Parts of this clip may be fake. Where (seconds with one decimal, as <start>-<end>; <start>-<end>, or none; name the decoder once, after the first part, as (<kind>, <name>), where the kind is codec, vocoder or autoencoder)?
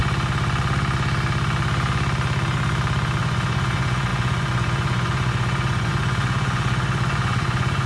3.2-7.9 (vocoder, Vocos)